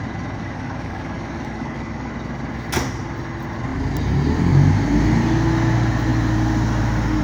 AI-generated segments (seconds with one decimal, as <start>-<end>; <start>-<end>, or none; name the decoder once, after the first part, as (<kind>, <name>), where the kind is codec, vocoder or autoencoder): 0.4-2.1 (codec, DAC)